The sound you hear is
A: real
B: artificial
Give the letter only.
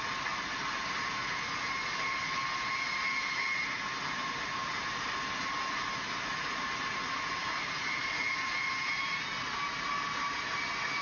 A